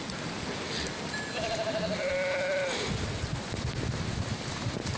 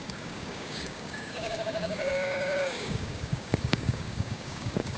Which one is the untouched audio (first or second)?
first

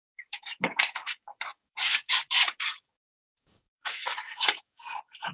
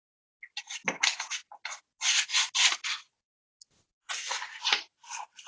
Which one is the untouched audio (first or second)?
second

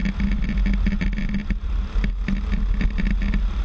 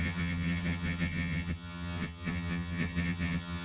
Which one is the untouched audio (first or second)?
first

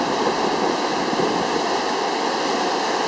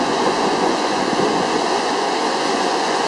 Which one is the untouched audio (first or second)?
first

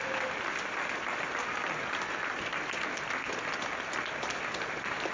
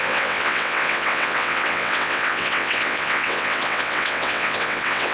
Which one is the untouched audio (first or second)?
first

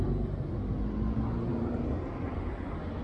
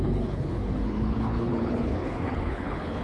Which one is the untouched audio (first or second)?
first